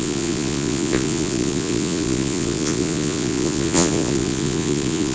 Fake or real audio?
fake